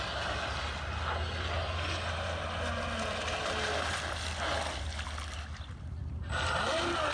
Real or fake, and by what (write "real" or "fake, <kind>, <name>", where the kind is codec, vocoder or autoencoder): real